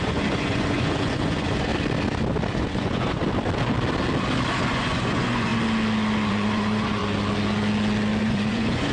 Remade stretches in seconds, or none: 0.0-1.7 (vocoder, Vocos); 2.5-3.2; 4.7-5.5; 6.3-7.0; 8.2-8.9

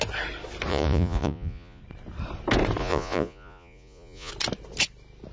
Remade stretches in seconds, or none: 0.7-1.8 (vocoder, Vocos); 2.8-4.3

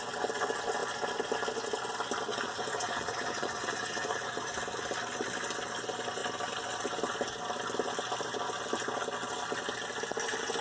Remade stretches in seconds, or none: 2.3-4.5 (vocoder, Vocos)

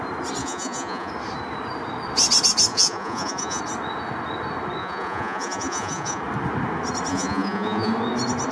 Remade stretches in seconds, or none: 0.4-1.1 (vocoder, Vocos); 2.7-3.6; 4.8-6.2; 7.1-7.9

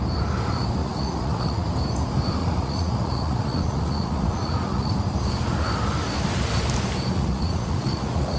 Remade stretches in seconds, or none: 0.8-1.7 (vocoder, Vocos); 2.4-4.9; 7.1-8.4

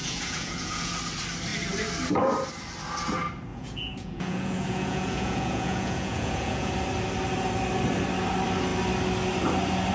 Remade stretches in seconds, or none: 0.0-0.9 (vocoder, Vocos); 3.5-6.7